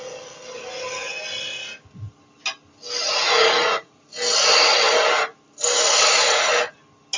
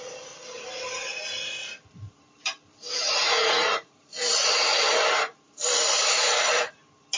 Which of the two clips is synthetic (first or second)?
second